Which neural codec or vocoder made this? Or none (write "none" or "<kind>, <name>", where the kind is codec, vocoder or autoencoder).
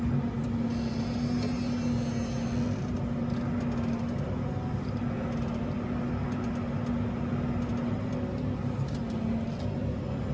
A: none